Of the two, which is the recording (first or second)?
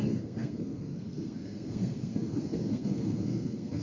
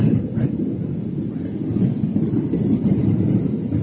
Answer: second